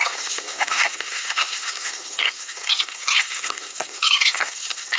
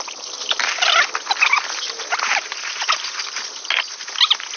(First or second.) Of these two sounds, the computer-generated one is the first